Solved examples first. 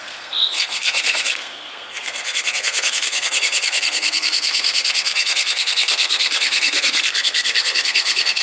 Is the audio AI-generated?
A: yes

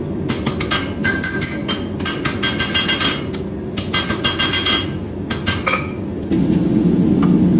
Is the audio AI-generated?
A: no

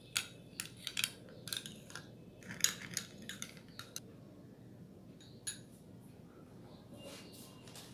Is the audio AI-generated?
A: no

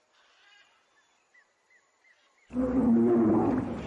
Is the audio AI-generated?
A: no